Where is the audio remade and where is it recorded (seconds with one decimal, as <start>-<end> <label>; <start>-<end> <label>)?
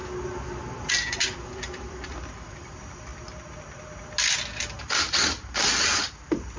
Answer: 0.0-0.9 recorded; 0.9-3.1 remade; 3.1-6.1 recorded; 6.1-6.6 remade